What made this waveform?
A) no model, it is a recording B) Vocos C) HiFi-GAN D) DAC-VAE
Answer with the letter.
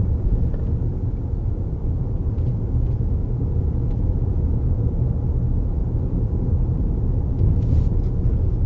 B